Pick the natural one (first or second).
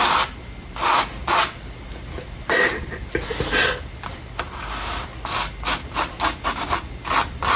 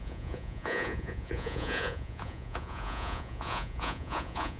first